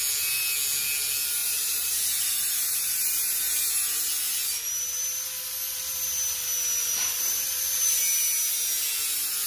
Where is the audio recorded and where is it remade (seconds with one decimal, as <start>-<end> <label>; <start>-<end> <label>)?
0.0-1.4 recorded; 1.4-3.7 remade; 3.7-6.8 recorded; 6.8-8.0 remade; 8.0-9.5 recorded

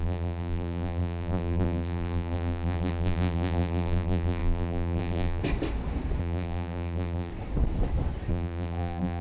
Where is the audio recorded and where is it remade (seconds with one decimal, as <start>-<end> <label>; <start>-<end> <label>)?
0.0-5.4 remade; 5.4-6.2 recorded; 6.2-7.3 remade; 7.3-8.3 recorded; 8.3-9.2 remade